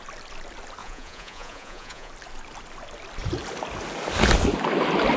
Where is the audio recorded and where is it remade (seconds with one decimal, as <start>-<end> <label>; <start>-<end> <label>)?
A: 0.0-0.8 recorded; 0.8-2.1 remade; 2.1-5.2 recorded